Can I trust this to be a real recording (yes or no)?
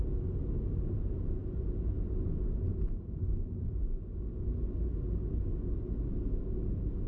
yes